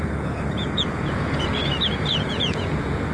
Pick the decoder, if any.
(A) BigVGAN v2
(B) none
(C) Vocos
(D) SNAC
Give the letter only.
C